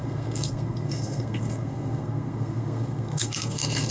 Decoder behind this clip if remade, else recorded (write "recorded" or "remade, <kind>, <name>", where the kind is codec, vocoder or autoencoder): remade, codec, SNAC